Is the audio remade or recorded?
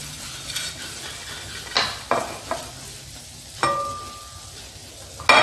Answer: recorded